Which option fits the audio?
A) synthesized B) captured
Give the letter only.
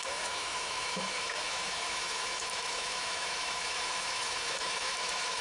A